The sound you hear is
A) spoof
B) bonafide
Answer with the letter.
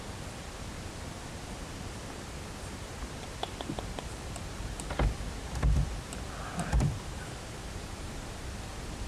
A